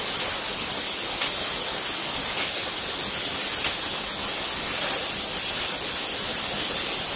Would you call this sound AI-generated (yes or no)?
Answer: no